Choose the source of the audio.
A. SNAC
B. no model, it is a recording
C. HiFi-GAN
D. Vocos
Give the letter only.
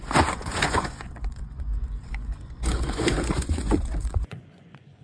D